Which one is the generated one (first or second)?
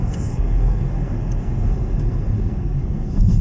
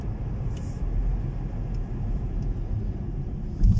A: first